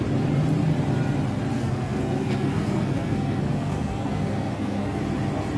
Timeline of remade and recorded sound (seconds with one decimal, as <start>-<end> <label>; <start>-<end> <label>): 0.0-1.6 recorded; 1.6-5.0 remade; 5.0-5.6 recorded